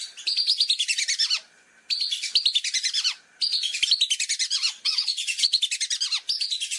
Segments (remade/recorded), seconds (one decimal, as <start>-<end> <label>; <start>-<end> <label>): 0.0-4.5 recorded; 4.5-5.6 remade; 5.6-6.8 recorded